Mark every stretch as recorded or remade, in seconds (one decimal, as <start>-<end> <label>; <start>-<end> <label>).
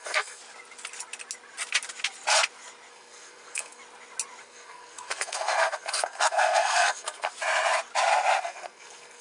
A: 0.0-0.4 remade; 0.4-2.9 recorded; 2.9-3.8 remade; 3.8-4.4 recorded; 4.4-7.3 remade; 7.3-8.4 recorded; 8.4-9.2 remade